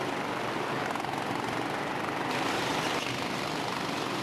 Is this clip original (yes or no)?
no